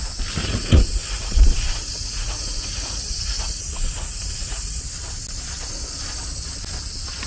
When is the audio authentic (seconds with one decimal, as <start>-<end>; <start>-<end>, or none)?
0.0-0.4; 4.8-7.3